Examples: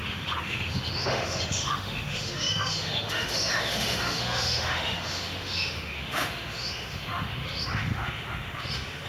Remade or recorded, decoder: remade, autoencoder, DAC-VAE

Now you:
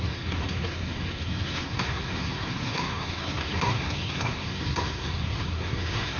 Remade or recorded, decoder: remade, codec, SNAC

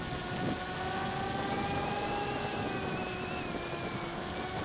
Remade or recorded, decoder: recorded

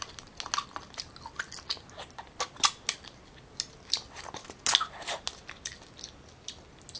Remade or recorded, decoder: recorded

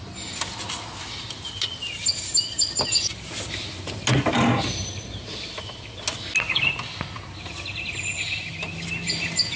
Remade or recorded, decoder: recorded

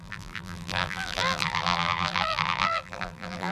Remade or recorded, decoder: remade, vocoder, BigVGAN v2